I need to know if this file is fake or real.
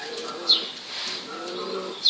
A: real